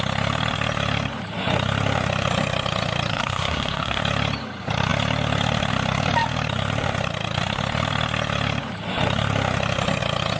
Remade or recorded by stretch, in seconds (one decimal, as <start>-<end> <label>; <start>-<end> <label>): 0.0-3.1 recorded; 3.1-4.0 remade; 4.0-10.4 recorded